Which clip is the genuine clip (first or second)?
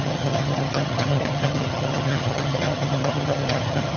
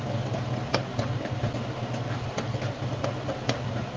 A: second